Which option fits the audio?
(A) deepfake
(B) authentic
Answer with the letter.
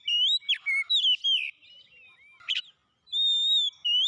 B